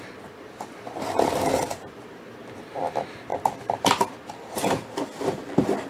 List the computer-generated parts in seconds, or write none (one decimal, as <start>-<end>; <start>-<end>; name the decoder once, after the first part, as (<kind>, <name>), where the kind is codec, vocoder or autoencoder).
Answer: 3.3-4.1 (vocoder, BigVGAN v2)